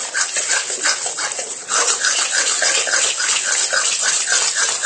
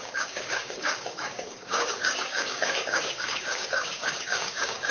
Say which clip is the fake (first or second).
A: second